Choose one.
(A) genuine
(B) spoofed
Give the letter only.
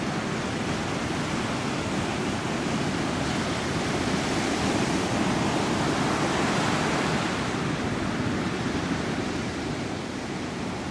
A